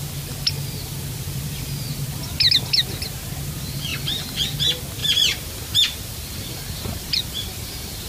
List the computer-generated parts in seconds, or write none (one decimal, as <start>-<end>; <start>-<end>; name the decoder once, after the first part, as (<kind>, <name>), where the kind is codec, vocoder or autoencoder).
5.0-8.1 (vocoder, BigVGAN v2)